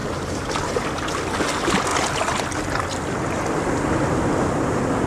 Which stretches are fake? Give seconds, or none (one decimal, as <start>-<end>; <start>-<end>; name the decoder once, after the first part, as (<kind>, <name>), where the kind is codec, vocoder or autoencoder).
0.0-0.5 (vocoder, BigVGAN v2)